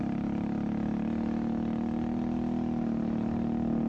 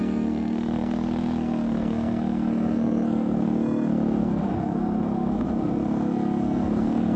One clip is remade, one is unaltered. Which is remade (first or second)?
second